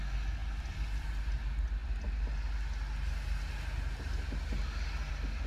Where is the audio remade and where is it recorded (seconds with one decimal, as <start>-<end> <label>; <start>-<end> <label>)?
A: 0.0-0.4 recorded; 0.4-1.1 remade; 1.1-5.5 recorded